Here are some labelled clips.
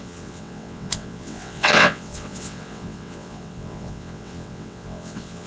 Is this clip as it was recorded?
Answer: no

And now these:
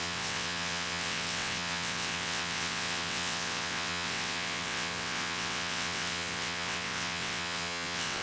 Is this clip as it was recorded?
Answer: no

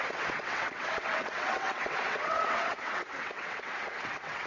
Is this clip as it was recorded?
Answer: no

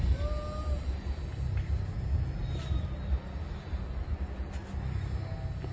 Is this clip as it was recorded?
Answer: yes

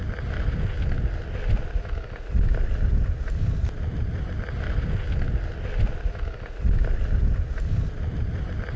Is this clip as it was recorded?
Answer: yes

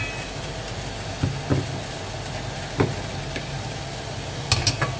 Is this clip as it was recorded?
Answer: yes